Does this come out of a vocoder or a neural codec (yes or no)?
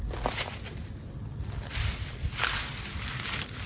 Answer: no